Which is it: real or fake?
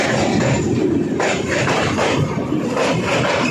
fake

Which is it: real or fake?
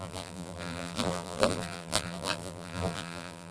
fake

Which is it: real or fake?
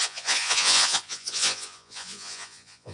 fake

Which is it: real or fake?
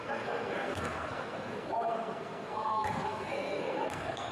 fake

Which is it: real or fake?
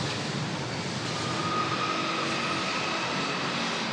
real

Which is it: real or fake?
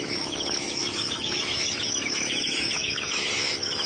fake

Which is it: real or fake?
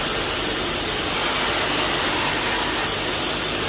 real